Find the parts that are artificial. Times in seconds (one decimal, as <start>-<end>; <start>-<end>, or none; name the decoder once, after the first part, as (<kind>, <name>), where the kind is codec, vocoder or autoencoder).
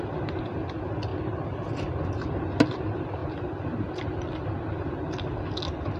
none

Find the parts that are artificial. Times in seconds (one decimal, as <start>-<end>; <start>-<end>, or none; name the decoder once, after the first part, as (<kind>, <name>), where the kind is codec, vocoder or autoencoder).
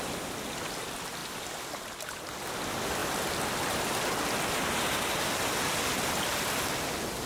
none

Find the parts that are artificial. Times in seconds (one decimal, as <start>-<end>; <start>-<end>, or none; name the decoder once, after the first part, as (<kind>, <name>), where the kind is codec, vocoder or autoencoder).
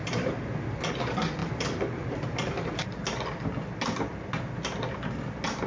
0.0-0.9 (vocoder, BigVGAN v2); 1.4-3.2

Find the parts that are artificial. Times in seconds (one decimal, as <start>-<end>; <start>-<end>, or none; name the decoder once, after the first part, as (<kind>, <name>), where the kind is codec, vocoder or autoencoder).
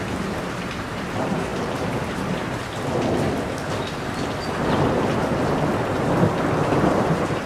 0.0-2.6 (vocoder, BigVGAN v2); 6.8-7.5